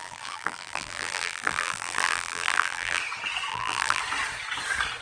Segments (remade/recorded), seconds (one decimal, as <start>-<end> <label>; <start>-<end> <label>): 0.0-3.0 remade; 3.0-3.5 recorded; 3.5-4.0 remade; 4.0-5.0 recorded